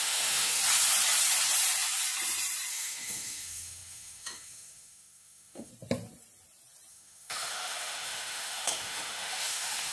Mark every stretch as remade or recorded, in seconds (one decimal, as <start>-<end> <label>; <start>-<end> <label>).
0.0-0.6 remade; 0.6-2.7 recorded; 2.7-5.7 remade; 5.7-6.9 recorded; 6.9-9.9 remade